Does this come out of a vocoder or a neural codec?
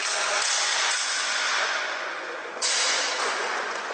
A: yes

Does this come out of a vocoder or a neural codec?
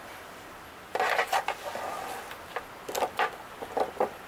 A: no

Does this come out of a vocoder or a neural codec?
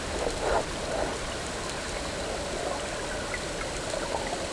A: no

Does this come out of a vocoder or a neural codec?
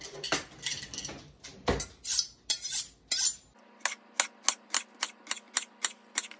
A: no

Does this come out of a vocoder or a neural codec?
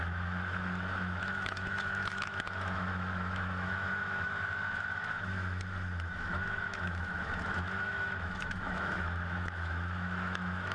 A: yes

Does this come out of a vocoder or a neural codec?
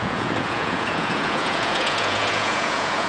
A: yes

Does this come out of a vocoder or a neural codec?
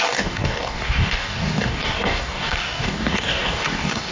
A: yes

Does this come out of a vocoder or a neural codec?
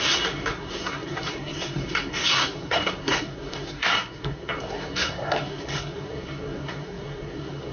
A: yes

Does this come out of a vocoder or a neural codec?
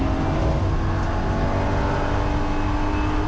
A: no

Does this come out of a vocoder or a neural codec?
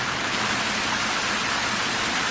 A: no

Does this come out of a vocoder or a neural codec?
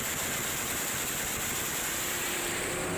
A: yes